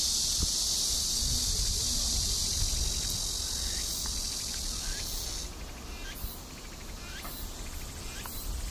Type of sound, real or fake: real